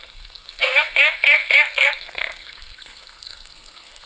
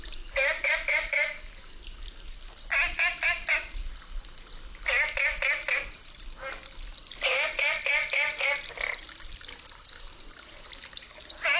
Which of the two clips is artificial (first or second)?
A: first